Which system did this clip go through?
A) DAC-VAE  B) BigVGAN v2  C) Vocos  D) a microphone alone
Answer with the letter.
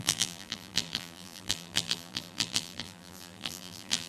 B